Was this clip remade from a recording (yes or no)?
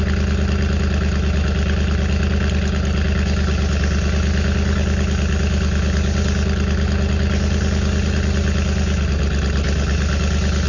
no